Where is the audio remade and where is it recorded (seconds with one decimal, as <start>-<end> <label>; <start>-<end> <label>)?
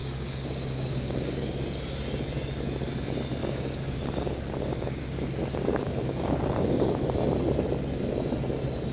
0.0-1.4 remade; 1.4-3.4 recorded; 3.4-7.2 remade; 7.2-8.9 recorded